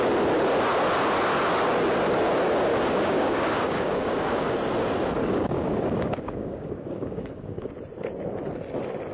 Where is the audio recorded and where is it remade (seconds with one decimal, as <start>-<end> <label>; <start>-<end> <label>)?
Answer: 0.0-2.7 recorded; 2.7-4.5 remade; 4.5-5.2 recorded; 5.2-7.7 remade; 7.7-9.1 recorded